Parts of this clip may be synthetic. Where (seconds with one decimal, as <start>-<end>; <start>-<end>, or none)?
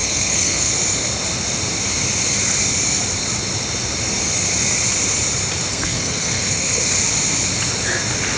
0.0-0.7; 5.7-6.8